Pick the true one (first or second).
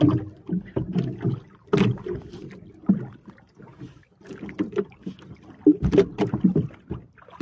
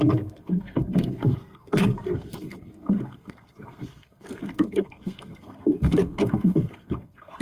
first